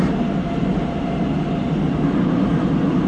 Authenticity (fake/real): real